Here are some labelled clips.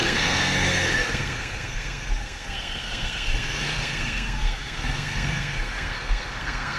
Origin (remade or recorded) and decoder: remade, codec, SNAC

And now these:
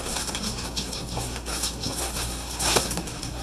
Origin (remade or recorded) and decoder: remade, codec, SNAC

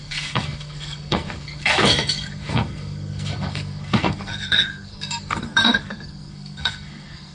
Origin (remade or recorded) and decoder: remade, codec, SNAC